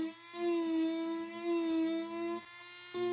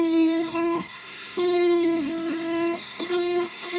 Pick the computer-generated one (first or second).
second